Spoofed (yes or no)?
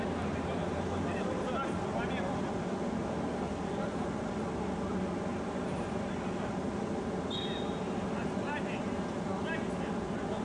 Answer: no